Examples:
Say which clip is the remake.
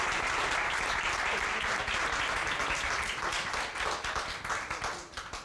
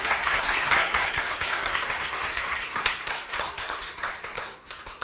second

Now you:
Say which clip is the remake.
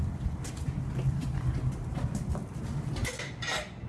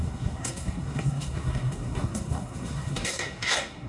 second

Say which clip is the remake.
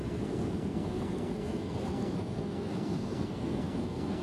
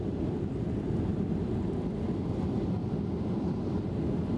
first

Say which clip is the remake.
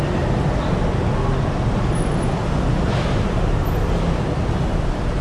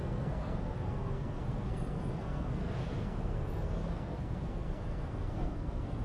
second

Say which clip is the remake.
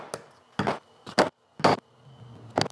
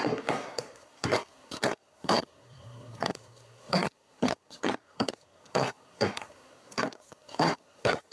second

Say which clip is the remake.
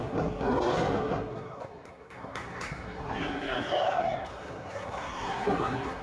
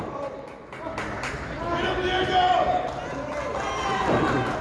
first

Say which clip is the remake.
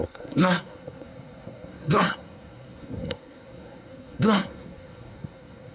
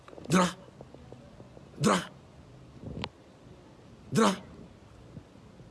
first